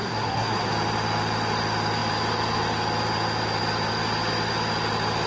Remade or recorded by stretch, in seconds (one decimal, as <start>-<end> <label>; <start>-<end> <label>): 0.0-0.7 remade; 0.7-5.3 recorded